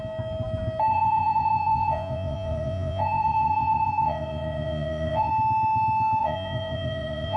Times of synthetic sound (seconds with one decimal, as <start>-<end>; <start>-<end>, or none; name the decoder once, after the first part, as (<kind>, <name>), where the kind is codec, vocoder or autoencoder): 0.9-5.3 (vocoder, Vocos); 6.2-7.4